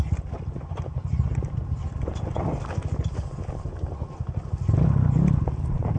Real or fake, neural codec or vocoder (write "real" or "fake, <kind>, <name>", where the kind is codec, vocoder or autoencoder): real